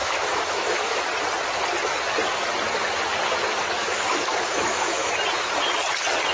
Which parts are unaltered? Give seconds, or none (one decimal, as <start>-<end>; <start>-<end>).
1.0-3.8; 5.1-6.3